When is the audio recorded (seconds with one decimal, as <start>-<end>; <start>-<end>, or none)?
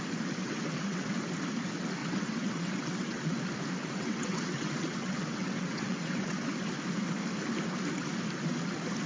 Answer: 0.0-0.4; 1.1-2.0; 3.4-3.8; 6.5-9.1